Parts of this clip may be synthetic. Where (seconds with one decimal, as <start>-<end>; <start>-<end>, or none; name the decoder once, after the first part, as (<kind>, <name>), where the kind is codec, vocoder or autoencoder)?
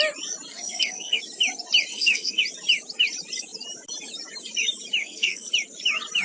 0.5-1.2 (codec, SNAC); 1.9-2.4; 5.0-5.5